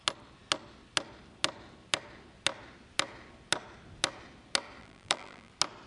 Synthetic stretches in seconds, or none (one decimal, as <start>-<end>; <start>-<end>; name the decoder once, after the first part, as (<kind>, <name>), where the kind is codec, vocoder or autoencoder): 4.8-5.5 (vocoder, BigVGAN v2)